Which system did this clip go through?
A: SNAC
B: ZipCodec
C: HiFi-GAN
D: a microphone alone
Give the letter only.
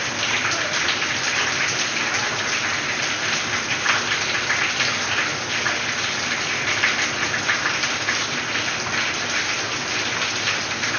D